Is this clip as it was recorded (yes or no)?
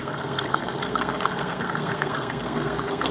no